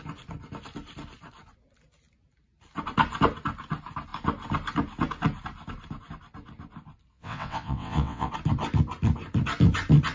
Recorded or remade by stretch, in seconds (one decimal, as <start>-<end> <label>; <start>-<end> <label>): 0.0-7.1 recorded; 7.1-8.3 remade; 8.3-10.1 recorded